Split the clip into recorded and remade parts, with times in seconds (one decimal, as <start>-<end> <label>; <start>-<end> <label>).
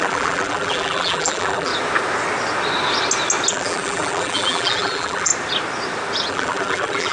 0.0-1.7 remade; 1.7-3.5 recorded; 3.5-5.3 remade; 5.3-6.3 recorded; 6.3-7.1 remade